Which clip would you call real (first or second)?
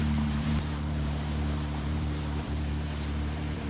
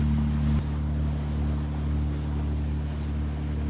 second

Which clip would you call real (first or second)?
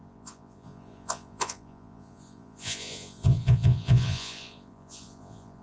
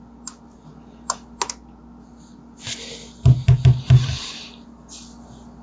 second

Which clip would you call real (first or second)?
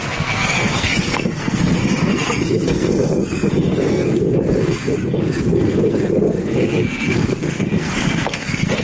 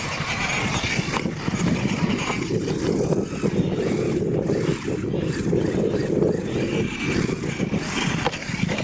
second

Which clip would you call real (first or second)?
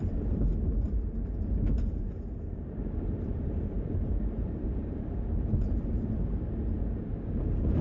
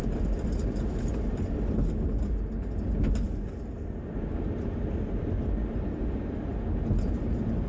second